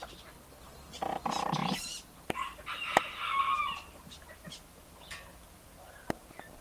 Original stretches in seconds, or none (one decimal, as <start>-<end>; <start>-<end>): 0.0-3.3; 4.9-5.7

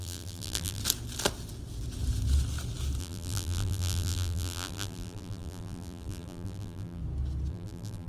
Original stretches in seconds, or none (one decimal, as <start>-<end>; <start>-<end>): 0.8-3.0; 7.0-7.5

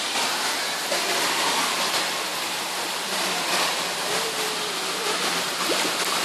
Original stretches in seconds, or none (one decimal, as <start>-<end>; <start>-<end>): none